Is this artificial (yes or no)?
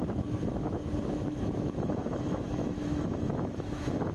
yes